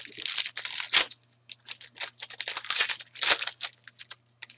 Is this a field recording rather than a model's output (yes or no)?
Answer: yes